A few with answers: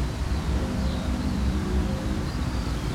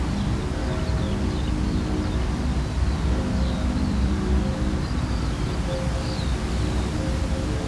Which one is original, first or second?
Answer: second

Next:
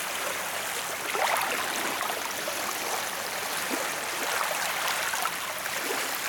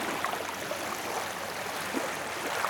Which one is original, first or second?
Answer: second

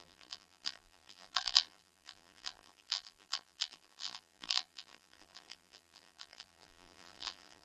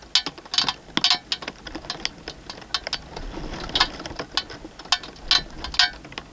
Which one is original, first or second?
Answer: second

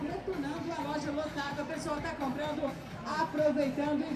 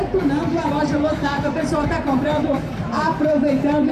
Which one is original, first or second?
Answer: first